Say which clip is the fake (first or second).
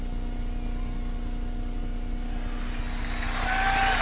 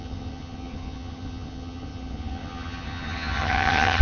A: second